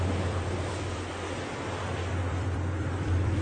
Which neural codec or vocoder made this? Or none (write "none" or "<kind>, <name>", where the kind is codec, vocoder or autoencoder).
vocoder, BigVGAN v2